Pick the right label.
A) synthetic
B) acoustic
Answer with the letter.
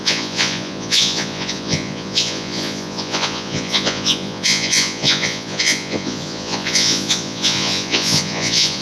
A